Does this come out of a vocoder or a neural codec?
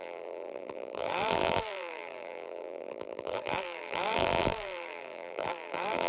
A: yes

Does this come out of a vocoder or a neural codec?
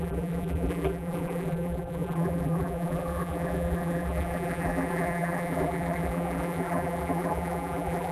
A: yes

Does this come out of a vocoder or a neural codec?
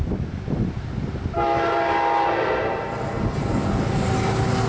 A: no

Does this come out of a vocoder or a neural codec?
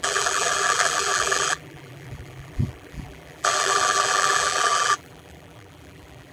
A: yes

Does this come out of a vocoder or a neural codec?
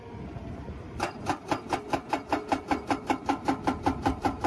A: yes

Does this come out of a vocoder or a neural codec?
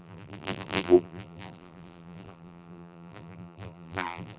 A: yes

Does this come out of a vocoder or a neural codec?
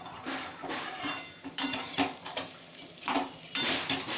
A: yes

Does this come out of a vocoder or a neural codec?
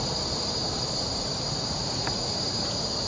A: yes